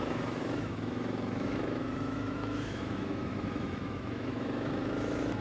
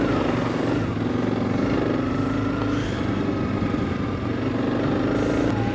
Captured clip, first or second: second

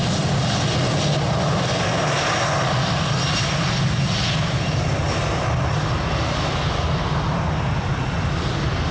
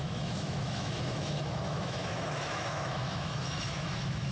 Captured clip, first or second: first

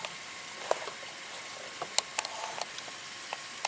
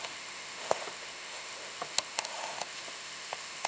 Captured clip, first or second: first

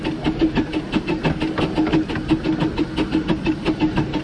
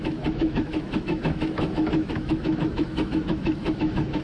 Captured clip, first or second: first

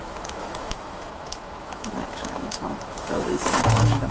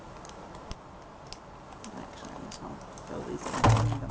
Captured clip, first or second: second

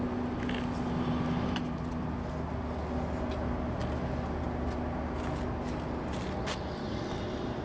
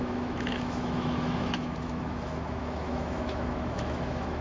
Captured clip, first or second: first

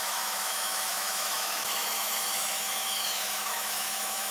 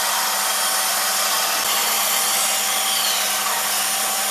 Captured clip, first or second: second